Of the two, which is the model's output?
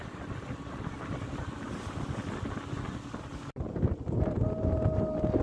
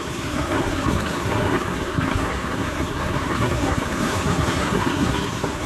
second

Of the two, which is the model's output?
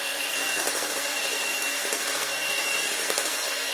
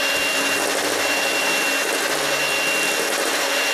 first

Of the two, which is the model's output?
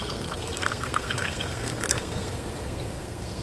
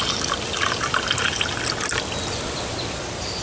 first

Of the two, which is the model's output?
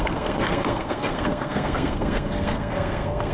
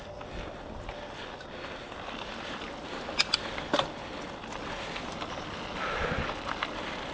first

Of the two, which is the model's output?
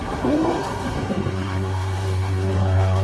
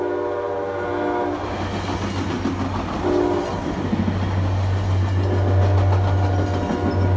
first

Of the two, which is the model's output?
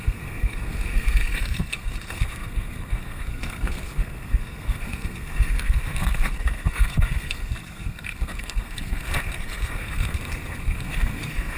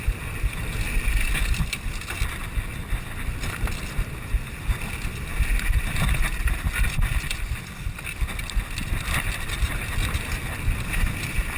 first